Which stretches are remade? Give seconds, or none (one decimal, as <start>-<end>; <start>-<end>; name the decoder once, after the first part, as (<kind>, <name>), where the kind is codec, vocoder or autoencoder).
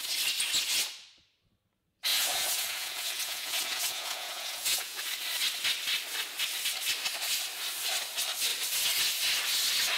2.1-5.0 (vocoder, Vocos)